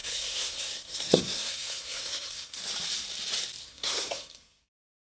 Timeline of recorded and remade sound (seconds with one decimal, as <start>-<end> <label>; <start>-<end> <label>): 0.0-2.6 remade; 2.6-3.6 recorded; 3.6-5.1 remade